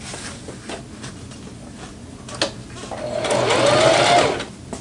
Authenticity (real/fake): real